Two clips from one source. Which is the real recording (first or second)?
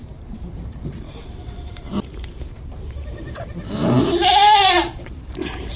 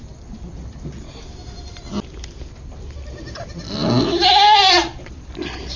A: second